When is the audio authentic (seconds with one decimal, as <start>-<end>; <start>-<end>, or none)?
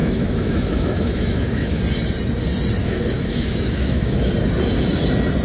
1.8-2.8; 4.3-5.4